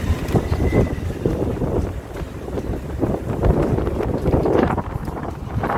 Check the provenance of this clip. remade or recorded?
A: remade